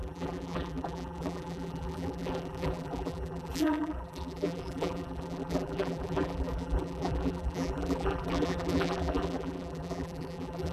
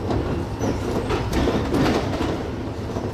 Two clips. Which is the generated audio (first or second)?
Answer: first